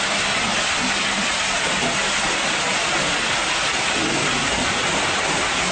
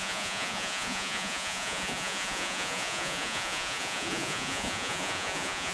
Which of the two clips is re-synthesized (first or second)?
second